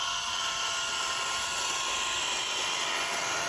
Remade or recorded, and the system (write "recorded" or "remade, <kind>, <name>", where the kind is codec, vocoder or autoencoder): recorded